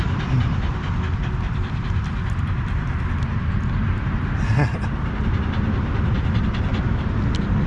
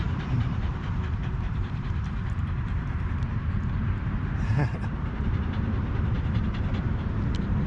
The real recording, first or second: first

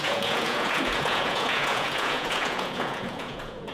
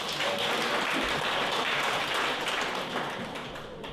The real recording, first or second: second